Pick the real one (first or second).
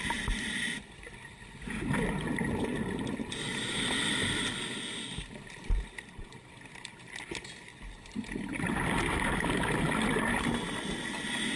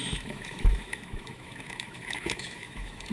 first